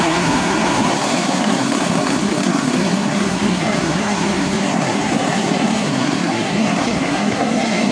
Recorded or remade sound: remade